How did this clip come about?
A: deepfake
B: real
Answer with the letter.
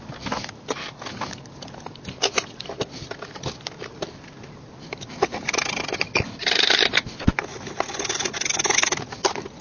B